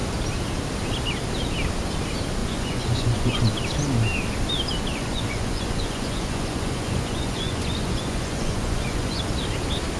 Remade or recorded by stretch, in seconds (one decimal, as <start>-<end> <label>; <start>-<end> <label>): 0.0-2.4 recorded; 2.4-3.4 remade; 3.4-4.9 recorded; 4.9-9.2 remade; 9.2-10.0 recorded